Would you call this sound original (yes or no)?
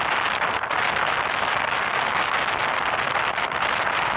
yes